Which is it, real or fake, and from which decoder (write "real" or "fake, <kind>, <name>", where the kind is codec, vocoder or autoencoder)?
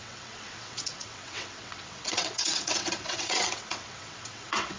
fake, vocoder, WaveNeXt